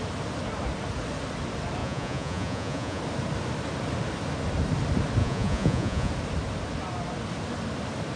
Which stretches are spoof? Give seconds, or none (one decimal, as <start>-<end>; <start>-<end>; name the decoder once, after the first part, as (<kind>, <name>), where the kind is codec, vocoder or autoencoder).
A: 1.8-3.0 (vocoder, Vocos); 5.2-6.1

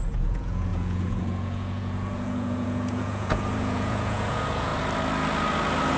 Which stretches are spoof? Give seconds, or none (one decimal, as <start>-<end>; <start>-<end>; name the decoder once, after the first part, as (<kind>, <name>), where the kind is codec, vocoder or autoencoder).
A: 0.0-4.7 (vocoder, Vocos)

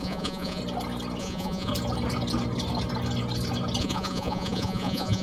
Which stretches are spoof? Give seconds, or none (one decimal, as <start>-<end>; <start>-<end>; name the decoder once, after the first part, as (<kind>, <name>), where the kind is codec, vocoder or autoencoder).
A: 0.0-0.6 (vocoder, Vocos); 1.2-1.7; 3.8-5.2

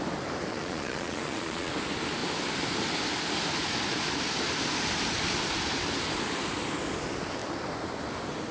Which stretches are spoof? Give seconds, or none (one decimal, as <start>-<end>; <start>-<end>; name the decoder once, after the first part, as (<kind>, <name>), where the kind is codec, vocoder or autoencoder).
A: 0.5-1.7 (vocoder, Vocos)